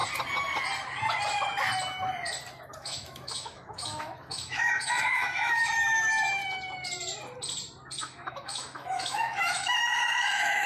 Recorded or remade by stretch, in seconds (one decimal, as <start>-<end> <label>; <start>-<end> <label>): 0.0-2.6 recorded; 2.6-6.4 remade; 6.4-8.0 recorded; 8.0-10.7 remade